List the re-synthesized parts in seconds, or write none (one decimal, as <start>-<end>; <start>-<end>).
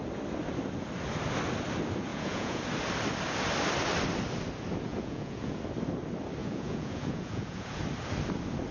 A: 2.1-2.6; 4.9-5.6; 6.4-7.8